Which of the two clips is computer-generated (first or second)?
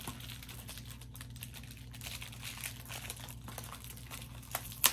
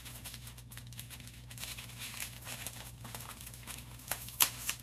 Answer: second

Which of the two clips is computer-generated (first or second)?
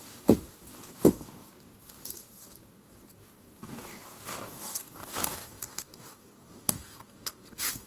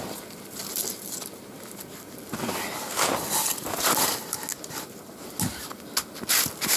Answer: first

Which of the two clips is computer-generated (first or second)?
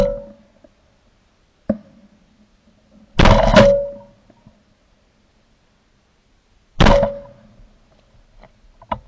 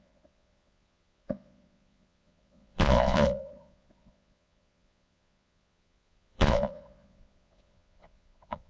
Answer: second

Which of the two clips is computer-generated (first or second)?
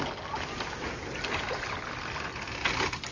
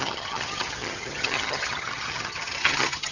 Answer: second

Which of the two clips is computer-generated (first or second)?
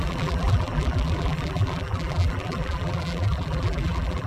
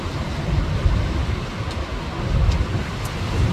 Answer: first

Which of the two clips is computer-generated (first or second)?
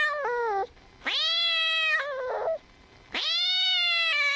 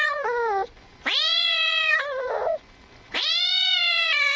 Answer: second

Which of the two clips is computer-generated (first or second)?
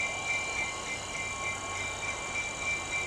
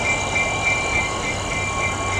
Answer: second